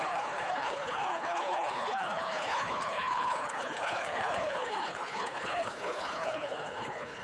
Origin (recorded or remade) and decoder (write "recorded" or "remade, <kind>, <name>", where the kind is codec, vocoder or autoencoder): remade, codec, HILCodec